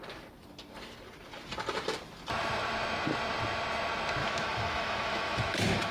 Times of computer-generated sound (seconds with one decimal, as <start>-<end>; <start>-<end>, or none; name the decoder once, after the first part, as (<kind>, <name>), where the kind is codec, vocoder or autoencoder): 4.2-5.9 (autoencoder, DAC-VAE)